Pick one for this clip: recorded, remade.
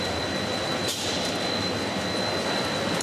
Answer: recorded